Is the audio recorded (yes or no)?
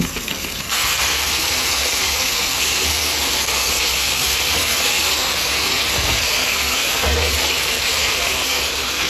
no